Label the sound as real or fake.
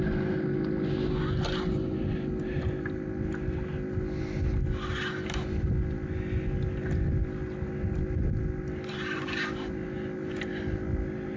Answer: real